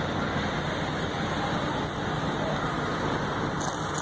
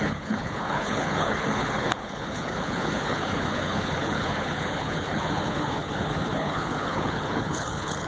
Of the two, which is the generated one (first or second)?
second